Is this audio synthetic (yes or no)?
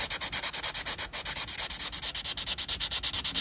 no